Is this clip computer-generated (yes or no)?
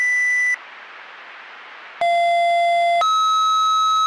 no